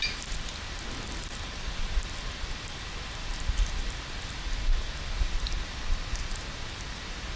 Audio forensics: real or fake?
real